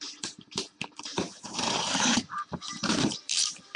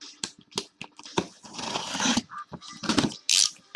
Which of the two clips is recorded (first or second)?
second